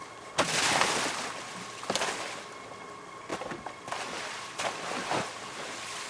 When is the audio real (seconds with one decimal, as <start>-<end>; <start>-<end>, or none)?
0.0-6.1